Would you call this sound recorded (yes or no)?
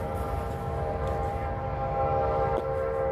yes